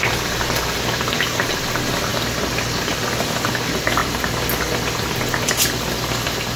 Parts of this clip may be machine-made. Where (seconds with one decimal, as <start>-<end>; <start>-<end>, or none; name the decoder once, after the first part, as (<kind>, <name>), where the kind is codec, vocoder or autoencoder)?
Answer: none